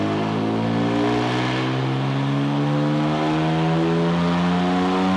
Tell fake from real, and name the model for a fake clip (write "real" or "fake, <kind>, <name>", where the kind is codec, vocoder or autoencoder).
real